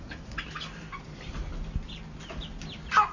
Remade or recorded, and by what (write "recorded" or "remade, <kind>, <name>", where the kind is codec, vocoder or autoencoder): recorded